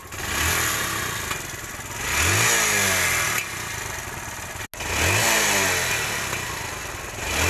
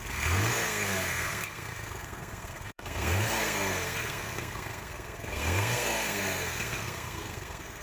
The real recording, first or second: first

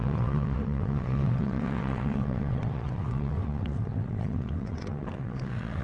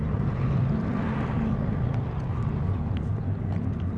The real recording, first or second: second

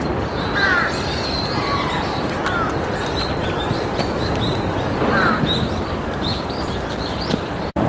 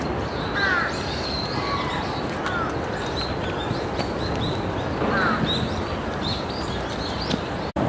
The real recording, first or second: second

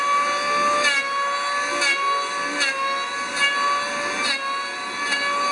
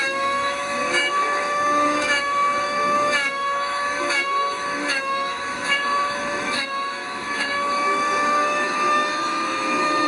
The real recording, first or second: first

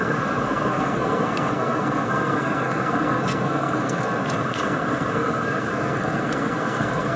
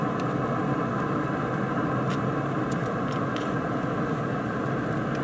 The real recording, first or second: second